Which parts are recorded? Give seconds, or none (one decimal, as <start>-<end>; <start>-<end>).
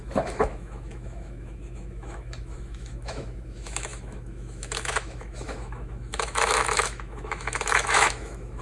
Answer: none